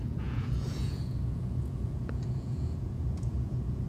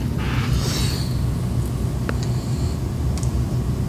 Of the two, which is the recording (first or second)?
second